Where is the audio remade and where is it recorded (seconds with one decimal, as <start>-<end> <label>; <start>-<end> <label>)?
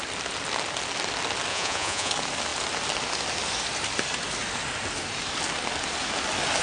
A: 0.0-1.5 recorded; 1.5-2.1 remade; 2.1-6.6 recorded